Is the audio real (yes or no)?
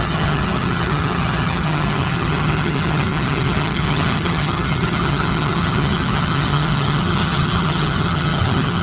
no